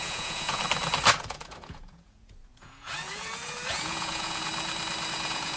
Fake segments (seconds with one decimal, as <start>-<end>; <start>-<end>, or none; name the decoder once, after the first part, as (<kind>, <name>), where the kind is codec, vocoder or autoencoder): 0.0-0.6 (vocoder, Vocos); 1.2-4.5; 5.1-5.6